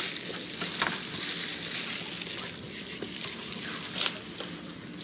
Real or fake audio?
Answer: real